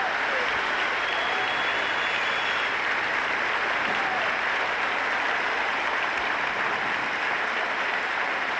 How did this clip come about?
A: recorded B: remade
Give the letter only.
A